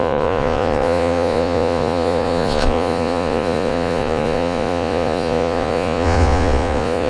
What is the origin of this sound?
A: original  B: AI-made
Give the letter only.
B